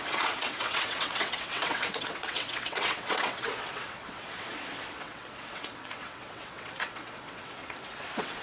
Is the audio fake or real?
fake